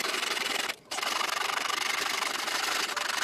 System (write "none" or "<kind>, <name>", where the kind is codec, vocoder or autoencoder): none